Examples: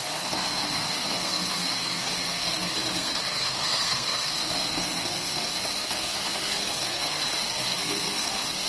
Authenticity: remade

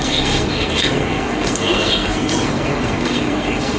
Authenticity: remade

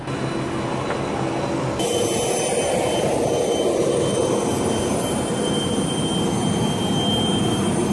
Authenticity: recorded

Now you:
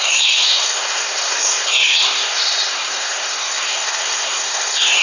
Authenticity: remade